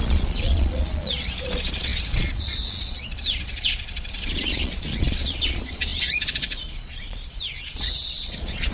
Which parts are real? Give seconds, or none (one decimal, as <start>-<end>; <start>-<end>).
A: none